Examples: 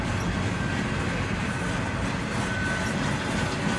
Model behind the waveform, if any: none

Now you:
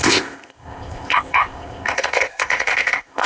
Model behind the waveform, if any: codec, ZipCodec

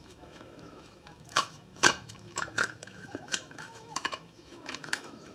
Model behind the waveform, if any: autoencoder, DAC-VAE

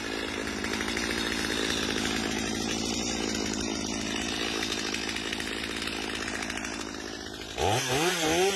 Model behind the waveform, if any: none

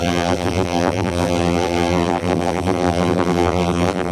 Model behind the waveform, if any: vocoder, BigVGAN v2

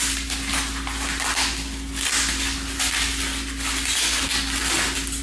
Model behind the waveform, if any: none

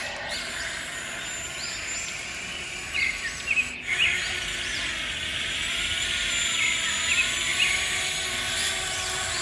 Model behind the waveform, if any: none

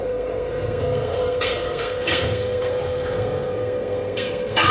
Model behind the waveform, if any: codec, SNAC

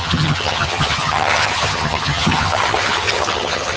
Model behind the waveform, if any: vocoder, HiFi-GAN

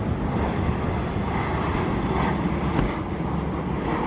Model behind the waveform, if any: none